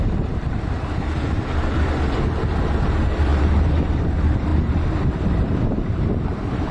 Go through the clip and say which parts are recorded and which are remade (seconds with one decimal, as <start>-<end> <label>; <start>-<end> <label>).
0.0-0.4 remade; 0.4-2.5 recorded; 2.5-6.7 remade